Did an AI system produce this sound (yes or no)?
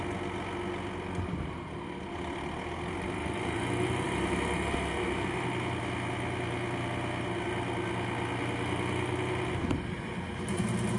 no